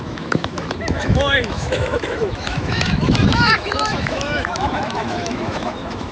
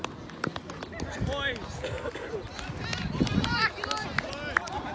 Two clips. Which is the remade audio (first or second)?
first